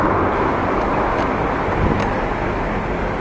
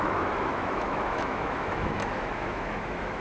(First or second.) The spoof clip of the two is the second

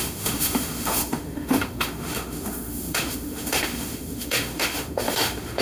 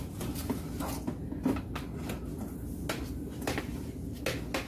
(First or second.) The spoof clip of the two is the first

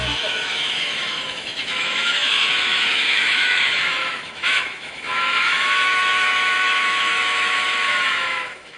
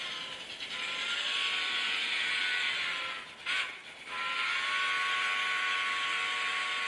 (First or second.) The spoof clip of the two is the first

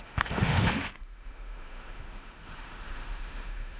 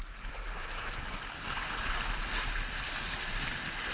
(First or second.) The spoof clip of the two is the first